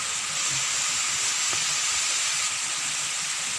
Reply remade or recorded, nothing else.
recorded